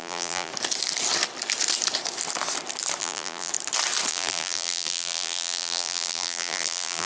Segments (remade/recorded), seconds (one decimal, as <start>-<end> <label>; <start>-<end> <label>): 0.0-0.5 remade; 0.5-3.0 recorded; 3.0-3.5 remade; 3.5-4.1 recorded; 4.1-7.1 remade